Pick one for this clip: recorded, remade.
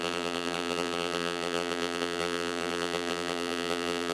remade